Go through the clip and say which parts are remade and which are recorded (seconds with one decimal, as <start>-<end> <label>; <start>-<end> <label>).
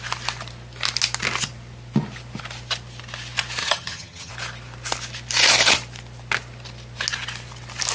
0.0-3.6 recorded; 3.6-4.3 remade; 4.3-7.9 recorded